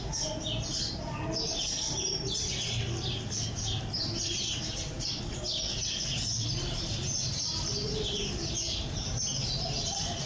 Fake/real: real